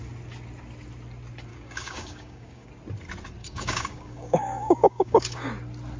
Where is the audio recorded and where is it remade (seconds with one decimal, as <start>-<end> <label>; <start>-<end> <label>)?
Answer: 0.0-1.5 recorded; 1.5-2.7 remade; 2.7-3.4 recorded; 3.4-5.5 remade; 5.5-6.0 recorded